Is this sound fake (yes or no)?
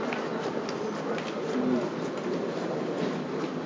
no